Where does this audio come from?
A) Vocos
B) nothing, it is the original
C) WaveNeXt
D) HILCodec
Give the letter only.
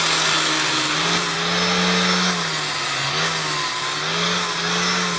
B